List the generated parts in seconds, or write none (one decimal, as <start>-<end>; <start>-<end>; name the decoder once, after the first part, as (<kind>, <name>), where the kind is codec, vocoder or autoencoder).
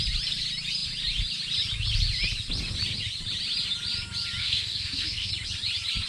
4.4-5.3 (codec, SNAC)